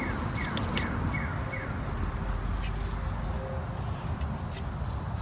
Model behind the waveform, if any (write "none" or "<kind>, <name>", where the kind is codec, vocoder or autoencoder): none